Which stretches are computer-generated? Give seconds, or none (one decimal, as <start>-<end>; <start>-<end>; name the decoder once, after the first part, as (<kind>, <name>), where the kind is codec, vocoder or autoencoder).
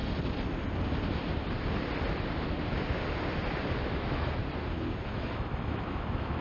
3.8-4.4 (autoencoder, DAC-VAE); 5.1-6.4